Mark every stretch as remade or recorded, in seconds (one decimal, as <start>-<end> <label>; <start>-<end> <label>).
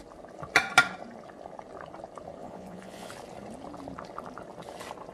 0.0-2.4 recorded; 2.4-3.1 remade; 3.1-5.1 recorded